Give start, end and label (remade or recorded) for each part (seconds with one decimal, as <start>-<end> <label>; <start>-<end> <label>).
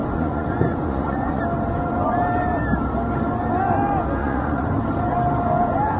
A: 0.0-1.4 remade; 1.4-4.2 recorded; 4.2-4.7 remade; 4.7-6.0 recorded